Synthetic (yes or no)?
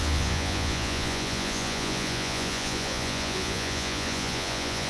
yes